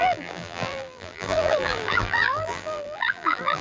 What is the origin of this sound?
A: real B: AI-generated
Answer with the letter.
B